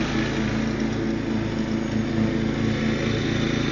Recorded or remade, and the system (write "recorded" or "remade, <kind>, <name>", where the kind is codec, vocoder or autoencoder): recorded